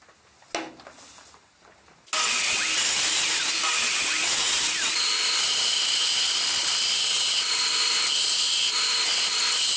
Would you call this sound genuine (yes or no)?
yes